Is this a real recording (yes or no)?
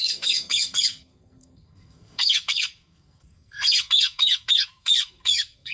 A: no